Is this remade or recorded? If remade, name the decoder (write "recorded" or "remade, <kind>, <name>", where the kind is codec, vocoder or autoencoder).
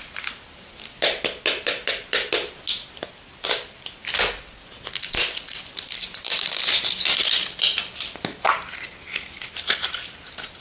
recorded